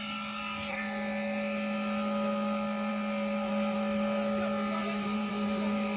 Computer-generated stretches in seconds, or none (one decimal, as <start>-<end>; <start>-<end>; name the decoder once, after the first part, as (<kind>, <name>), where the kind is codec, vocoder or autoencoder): 4.8-5.3 (vocoder, BigVGAN v2)